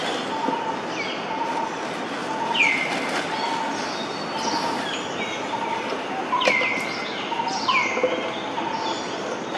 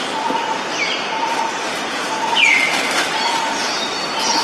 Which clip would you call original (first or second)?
first